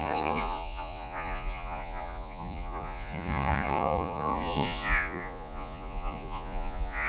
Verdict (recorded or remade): remade